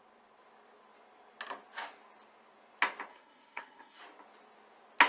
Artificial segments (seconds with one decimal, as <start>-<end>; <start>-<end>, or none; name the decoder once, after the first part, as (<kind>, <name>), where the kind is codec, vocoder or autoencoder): 3.1-4.0 (codec, SNAC)